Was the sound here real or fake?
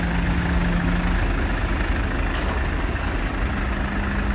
real